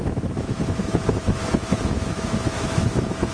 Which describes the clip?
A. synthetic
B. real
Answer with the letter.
A